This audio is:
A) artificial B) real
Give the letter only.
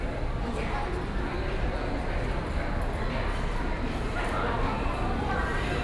B